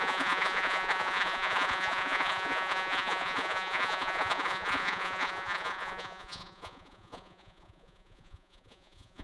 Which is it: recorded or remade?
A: remade